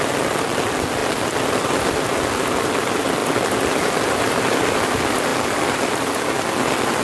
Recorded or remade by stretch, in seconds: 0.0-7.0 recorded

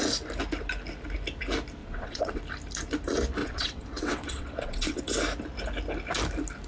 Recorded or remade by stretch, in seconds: 0.0-1.8 recorded; 1.8-2.4 remade; 2.4-3.4 recorded; 3.4-5.0 remade; 5.0-6.7 recorded